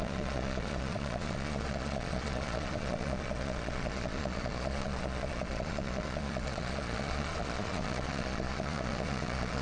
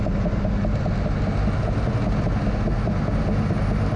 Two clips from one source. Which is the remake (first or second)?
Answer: first